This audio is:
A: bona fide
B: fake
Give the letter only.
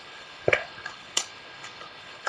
B